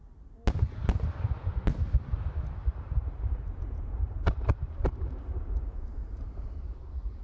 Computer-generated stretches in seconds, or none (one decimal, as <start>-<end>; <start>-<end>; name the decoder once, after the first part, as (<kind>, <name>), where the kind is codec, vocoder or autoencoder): 2.6-7.2 (vocoder, BigVGAN v2)